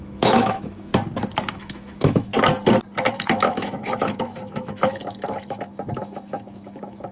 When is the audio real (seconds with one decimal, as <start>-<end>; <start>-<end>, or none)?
0.9-1.5; 2.3-3.1